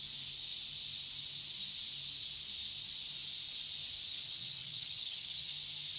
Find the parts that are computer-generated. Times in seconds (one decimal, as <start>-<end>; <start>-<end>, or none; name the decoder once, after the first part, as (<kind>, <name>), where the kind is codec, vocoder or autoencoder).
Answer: 4.1-5.5 (vocoder, HiFi-GAN)

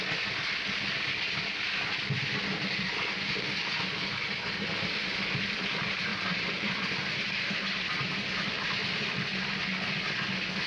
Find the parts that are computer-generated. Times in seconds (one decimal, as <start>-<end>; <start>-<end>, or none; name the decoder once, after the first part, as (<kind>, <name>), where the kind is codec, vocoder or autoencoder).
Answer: 6.1-8.3 (vocoder, BigVGAN v2)

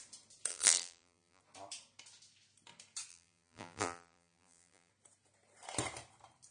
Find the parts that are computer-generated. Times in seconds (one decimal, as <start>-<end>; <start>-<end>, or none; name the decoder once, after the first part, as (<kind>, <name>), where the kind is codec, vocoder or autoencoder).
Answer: 0.5-1.4 (vocoder, BigVGAN v2); 3.1-4.9

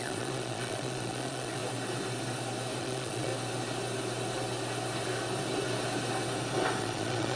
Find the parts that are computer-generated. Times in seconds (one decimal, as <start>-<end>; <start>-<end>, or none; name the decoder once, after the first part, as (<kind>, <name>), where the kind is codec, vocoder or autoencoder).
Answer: 0.0-1.6 (vocoder, Vocos); 2.8-3.3; 6.8-7.4

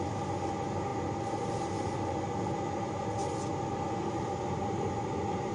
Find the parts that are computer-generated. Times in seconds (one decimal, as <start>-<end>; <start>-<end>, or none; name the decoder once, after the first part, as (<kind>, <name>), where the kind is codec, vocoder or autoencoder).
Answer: none

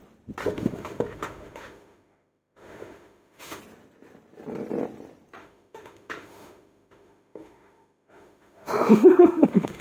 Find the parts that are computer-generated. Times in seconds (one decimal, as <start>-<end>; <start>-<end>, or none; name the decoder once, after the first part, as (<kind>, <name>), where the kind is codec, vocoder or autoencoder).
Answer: 0.4-3.6 (autoencoder, DAC-VAE); 5.4-9.8

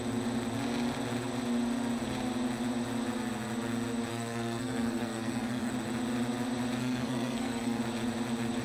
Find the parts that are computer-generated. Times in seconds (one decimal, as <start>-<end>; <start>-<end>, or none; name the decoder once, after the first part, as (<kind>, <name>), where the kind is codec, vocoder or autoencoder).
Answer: 4.1-5.7 (codec, SNAC); 6.8-7.8